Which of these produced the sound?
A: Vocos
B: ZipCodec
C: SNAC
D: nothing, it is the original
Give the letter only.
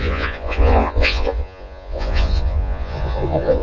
A